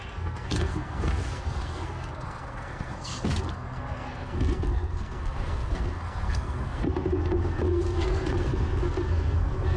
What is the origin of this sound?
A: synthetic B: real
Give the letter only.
A